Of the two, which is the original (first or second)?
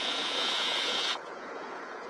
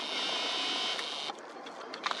second